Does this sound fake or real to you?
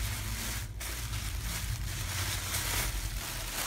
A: real